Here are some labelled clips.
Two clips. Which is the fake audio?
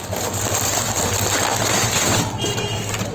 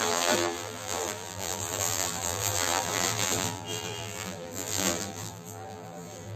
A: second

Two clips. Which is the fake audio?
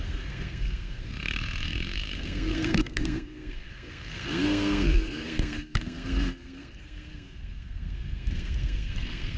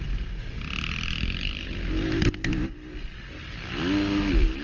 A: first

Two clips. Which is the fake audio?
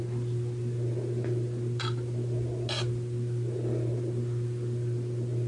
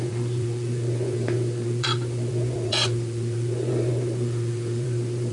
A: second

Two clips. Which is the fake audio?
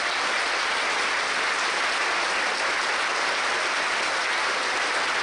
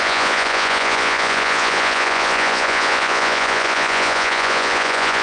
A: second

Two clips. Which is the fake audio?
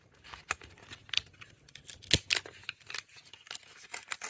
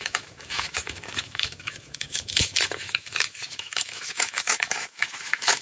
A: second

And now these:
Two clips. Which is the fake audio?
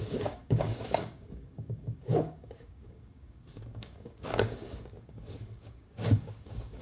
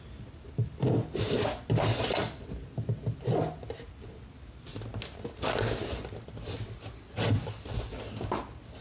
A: first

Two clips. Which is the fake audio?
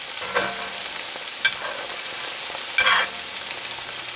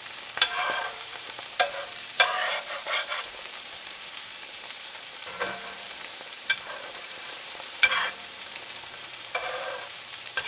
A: second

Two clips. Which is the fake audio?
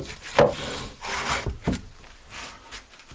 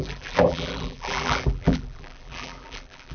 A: second